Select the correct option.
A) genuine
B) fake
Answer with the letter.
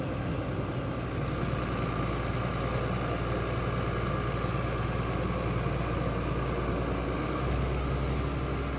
A